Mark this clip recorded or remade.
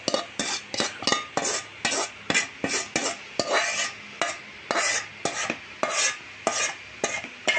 recorded